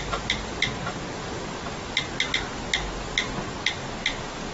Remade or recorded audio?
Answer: recorded